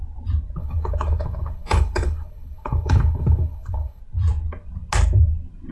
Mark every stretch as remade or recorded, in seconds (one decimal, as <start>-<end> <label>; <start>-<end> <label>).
0.0-0.6 recorded; 0.6-4.0 remade; 4.0-5.7 recorded